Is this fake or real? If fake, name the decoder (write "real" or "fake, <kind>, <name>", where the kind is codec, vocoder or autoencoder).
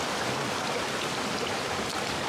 real